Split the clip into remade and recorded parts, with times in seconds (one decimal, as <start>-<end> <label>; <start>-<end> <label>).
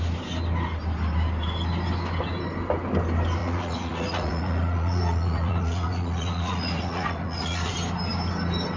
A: 0.0-3.4 recorded; 3.4-7.7 remade; 7.7-8.8 recorded